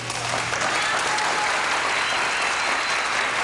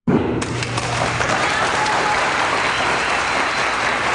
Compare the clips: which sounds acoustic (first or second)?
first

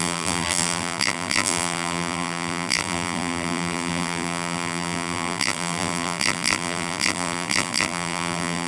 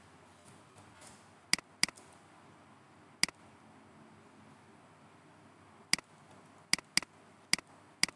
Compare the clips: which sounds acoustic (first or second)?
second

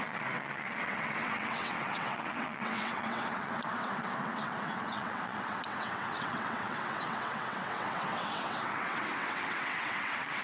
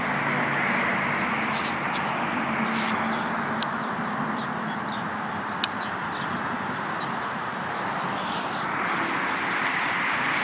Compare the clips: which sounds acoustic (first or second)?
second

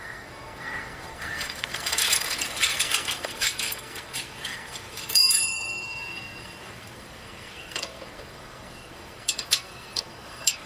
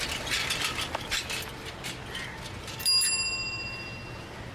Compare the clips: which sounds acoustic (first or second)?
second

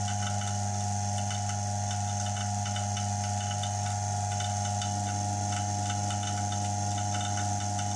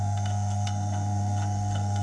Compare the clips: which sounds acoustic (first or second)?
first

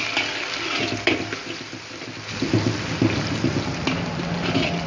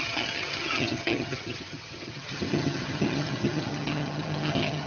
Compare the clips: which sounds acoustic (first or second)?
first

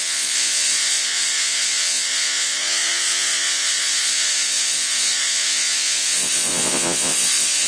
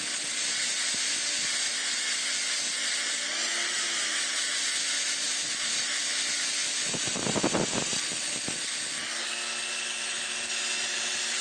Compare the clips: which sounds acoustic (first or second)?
second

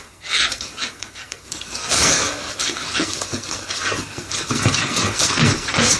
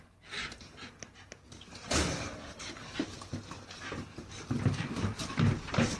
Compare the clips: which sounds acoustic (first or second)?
second